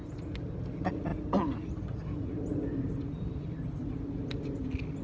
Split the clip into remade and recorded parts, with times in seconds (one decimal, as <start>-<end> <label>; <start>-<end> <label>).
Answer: 0.0-5.0 recorded